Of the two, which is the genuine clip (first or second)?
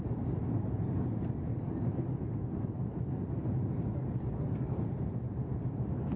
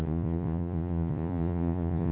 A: first